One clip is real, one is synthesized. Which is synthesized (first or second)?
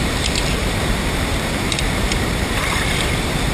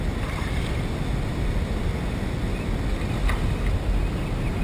first